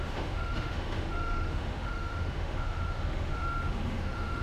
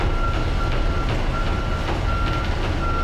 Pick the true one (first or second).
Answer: second